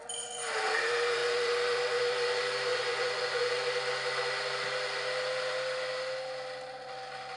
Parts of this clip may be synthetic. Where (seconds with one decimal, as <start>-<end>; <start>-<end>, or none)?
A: 2.7-3.5